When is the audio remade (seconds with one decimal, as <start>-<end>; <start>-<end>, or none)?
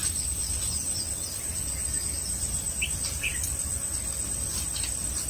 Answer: 0.0-1.0; 1.8-3.5